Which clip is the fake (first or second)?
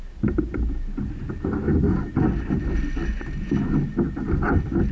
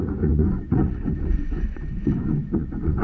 second